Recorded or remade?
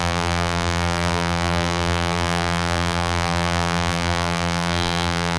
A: remade